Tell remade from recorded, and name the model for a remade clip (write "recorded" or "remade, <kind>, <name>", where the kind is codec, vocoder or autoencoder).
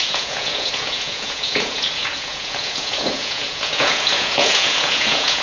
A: remade, vocoder, Vocos